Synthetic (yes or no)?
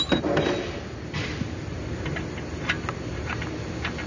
no